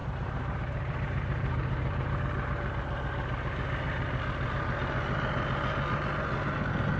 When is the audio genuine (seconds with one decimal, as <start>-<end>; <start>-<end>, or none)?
2.2-7.0

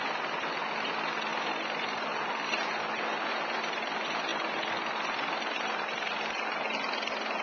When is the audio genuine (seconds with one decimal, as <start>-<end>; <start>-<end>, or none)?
0.0-4.3; 6.4-7.4